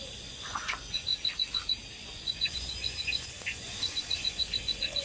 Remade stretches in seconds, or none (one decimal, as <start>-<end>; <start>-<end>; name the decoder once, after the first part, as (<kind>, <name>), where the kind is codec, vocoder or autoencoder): 0.0-1.1 (vocoder, Vocos); 2.0-5.0